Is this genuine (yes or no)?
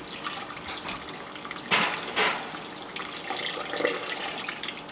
yes